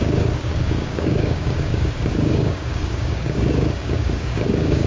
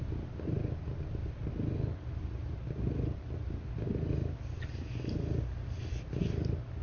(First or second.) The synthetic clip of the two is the first